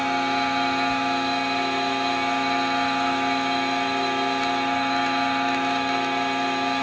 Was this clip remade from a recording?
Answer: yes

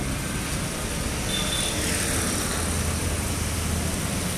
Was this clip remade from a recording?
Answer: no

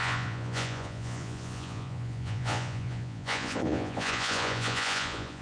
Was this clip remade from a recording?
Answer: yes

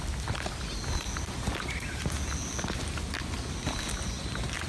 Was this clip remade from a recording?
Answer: no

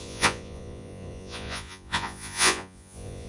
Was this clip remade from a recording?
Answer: yes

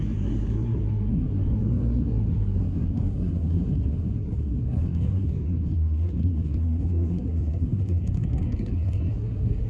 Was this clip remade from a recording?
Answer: yes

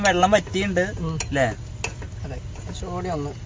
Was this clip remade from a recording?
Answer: no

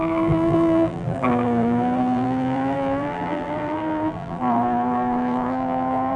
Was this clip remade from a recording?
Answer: yes